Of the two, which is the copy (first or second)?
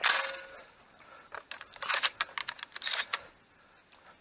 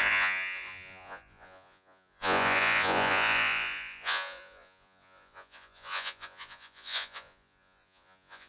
second